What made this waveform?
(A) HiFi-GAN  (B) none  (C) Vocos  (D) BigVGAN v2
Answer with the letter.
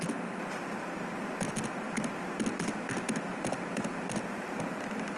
B